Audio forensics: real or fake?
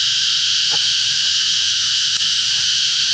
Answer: fake